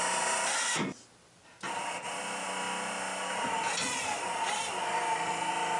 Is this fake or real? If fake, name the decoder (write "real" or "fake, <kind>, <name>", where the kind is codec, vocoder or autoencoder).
real